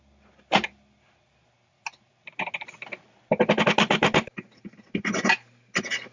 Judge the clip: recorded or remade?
recorded